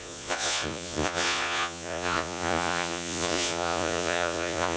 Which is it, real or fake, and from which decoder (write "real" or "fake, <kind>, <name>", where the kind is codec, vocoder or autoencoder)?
fake, vocoder, Vocos